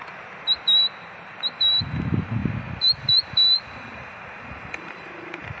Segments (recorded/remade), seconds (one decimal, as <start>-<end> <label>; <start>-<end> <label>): 0.0-2.4 recorded; 2.4-5.6 remade